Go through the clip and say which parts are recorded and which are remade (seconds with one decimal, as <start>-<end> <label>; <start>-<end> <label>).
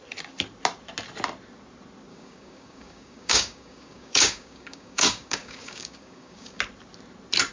0.0-2.1 recorded; 2.1-6.6 remade; 6.6-7.5 recorded